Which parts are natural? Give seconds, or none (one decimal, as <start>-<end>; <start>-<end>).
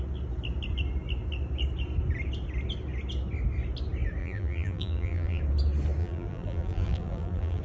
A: 0.0-4.2; 5.4-6.0